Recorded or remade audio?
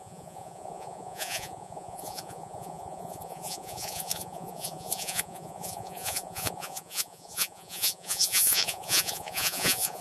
remade